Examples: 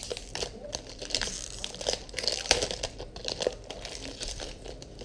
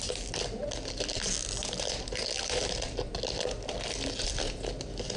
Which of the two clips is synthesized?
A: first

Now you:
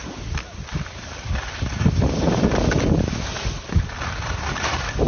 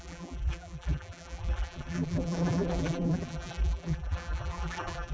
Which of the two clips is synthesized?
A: second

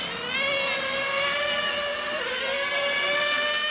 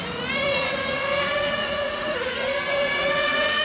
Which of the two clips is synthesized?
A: second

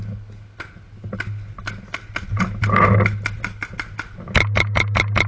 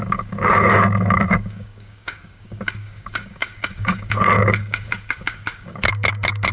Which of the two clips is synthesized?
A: second